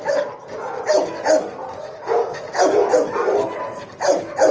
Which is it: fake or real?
real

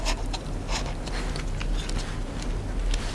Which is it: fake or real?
real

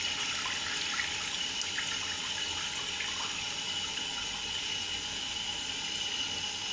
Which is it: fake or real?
real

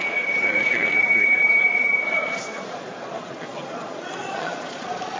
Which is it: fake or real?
fake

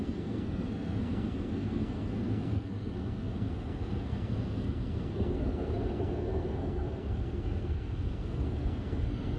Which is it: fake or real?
fake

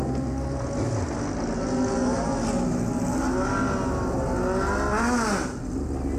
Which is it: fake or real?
real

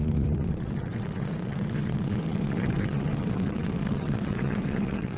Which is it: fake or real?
fake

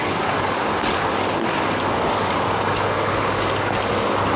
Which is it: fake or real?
fake